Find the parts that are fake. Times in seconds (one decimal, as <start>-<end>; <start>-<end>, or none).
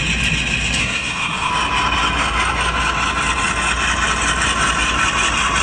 0.8-1.5